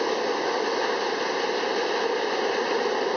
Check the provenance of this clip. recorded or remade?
recorded